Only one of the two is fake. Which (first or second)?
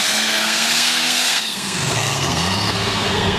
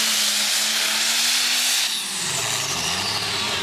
first